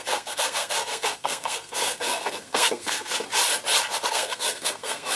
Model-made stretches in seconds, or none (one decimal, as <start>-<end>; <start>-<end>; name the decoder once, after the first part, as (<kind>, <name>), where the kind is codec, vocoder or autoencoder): 0.0-3.1 (codec, SNAC); 4.1-5.2